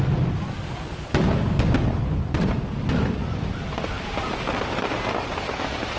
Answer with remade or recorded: recorded